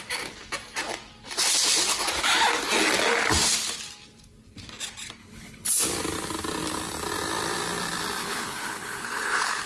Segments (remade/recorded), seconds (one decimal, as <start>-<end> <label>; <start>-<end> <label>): 0.0-5.2 recorded; 5.2-5.7 remade; 5.7-8.2 recorded; 8.2-9.7 remade